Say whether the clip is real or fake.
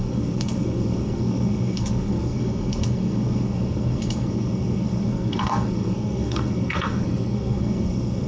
fake